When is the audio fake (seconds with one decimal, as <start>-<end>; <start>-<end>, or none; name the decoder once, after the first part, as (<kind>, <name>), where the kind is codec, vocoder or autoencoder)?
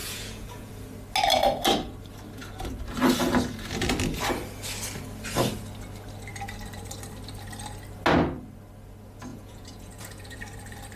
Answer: 0.0-0.7 (vocoder, Vocos); 9.3-10.4